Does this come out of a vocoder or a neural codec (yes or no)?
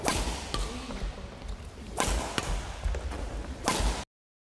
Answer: no